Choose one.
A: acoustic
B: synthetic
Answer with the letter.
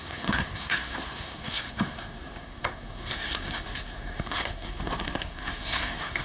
B